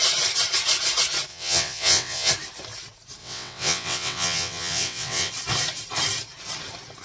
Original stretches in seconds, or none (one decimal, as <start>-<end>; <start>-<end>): 0.0-1.3; 2.3-3.2; 5.3-7.0